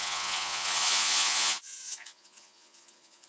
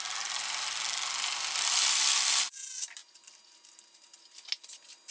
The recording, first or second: second